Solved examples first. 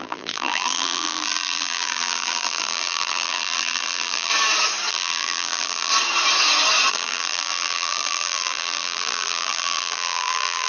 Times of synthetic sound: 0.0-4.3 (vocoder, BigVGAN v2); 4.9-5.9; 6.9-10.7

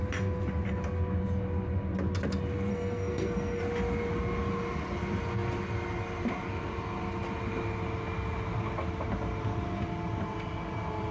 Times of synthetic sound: 2.7-3.6 (codec, SNAC)

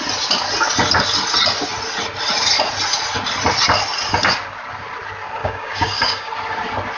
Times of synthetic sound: 5.4-6.3 (codec, DAC)